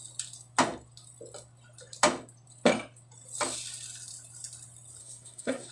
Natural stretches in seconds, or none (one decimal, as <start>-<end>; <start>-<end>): 0.0-5.0